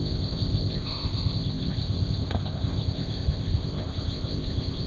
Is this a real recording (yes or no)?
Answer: no